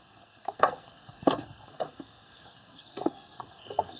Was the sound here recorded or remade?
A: remade